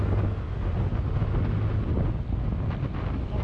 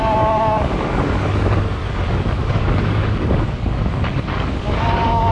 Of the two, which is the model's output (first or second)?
second